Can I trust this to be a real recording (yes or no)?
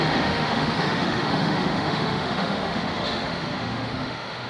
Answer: no